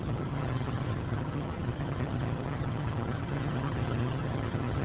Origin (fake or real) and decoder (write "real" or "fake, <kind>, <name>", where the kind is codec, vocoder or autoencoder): fake, vocoder, HiFi-GAN